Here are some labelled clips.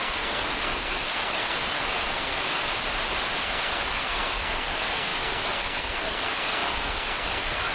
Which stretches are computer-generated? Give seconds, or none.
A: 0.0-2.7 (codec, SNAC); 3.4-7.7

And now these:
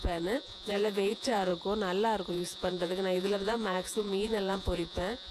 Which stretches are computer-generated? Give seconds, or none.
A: 0.0-1.5 (vocoder, Vocos); 2.3-5.3

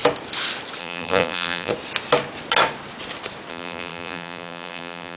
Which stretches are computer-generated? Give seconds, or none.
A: 0.8-1.7 (vocoder, BigVGAN v2); 3.5-5.2

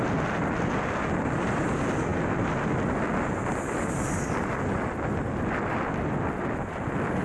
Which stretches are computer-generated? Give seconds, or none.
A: none

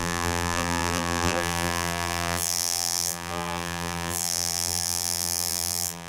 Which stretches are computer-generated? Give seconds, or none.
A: 0.0-6.1 (vocoder, BigVGAN v2)

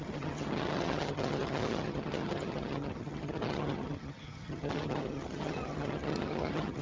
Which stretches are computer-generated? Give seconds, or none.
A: 0.0-6.8 (vocoder, HiFi-GAN)

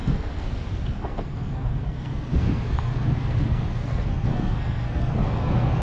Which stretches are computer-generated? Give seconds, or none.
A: 0.0-5.8 (codec, SNAC)